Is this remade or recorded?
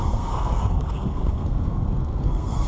remade